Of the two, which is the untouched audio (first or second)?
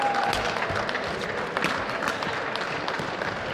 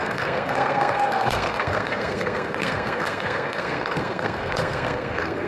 first